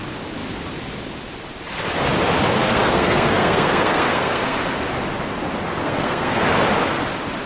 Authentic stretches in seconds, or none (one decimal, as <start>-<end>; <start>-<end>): 0.0-2.5; 4.6-5.8; 6.4-7.5